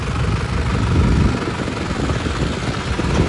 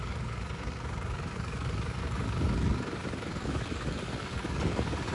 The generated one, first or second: second